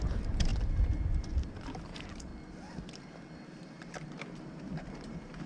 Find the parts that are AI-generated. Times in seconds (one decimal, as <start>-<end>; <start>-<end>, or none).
0.0-0.5; 1.3-2.3; 3.6-5.5